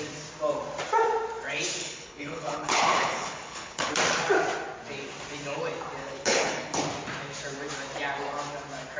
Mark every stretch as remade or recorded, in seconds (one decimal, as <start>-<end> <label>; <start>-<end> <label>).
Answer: 0.0-1.8 recorded; 1.8-3.9 remade; 3.9-6.0 recorded; 6.0-6.8 remade; 6.8-9.0 recorded